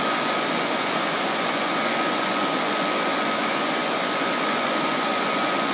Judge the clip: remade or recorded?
remade